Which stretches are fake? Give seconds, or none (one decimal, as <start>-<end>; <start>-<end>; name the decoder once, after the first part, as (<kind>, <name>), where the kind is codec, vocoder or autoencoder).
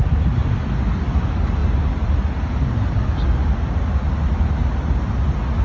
none